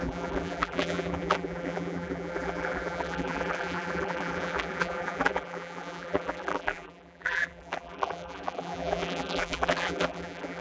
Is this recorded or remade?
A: remade